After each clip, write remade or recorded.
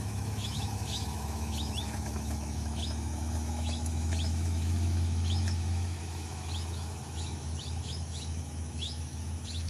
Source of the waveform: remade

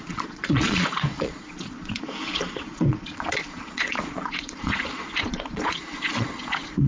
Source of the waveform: remade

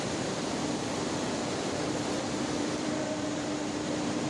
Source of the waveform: remade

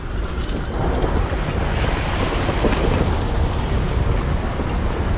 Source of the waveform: recorded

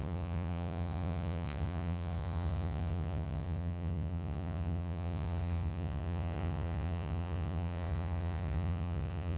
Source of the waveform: remade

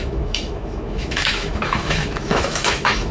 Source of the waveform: remade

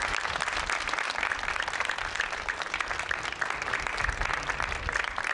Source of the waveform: recorded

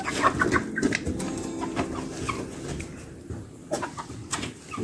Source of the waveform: recorded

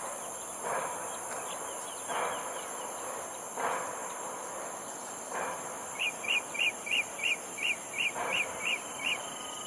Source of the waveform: recorded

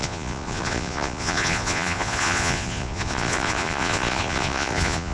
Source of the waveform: remade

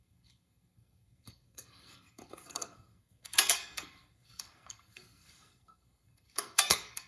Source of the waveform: remade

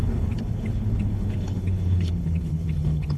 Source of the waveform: remade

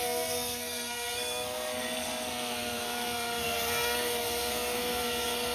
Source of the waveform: remade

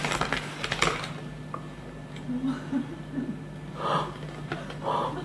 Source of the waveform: recorded